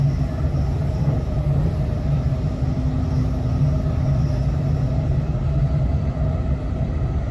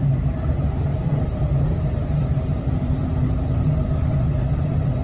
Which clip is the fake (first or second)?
second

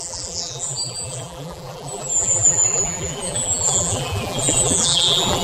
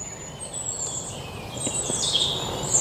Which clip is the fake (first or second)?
first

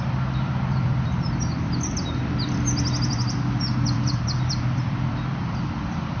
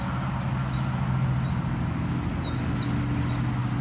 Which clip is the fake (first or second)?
first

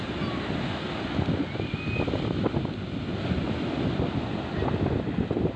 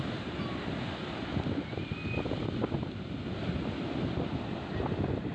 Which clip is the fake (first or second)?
second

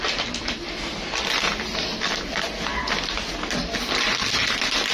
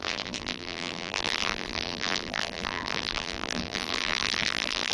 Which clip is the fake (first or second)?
second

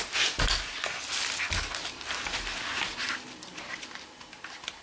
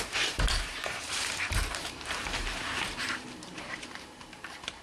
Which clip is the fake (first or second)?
second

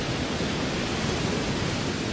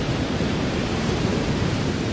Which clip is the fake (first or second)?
second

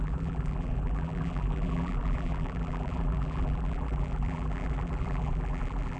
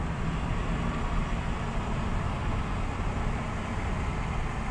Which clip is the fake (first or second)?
first